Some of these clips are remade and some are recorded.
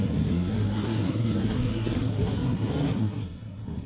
remade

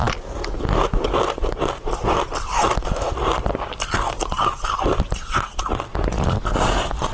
recorded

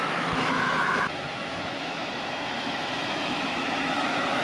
remade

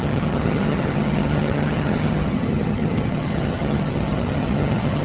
remade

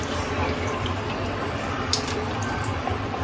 remade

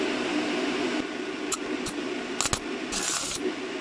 recorded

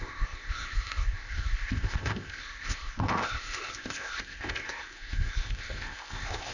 remade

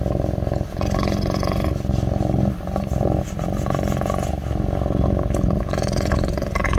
recorded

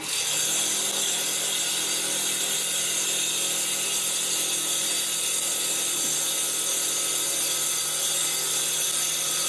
recorded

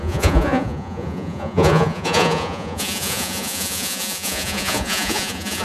remade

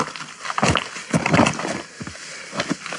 recorded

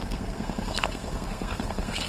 remade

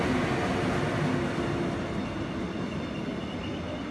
recorded